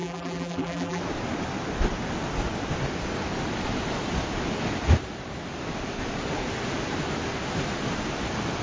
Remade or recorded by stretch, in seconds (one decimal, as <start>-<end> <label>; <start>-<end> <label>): 0.0-1.0 remade; 1.0-8.6 recorded